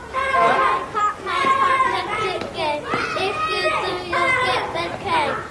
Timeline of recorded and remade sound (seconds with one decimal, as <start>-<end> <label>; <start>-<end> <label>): 0.0-5.5 recorded